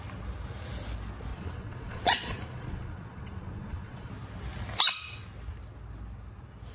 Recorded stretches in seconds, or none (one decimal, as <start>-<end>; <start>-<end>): 0.0-1.3; 4.1-6.7